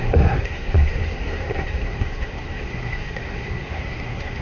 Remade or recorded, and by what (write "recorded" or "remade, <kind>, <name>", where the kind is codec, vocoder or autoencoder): remade, codec, SNAC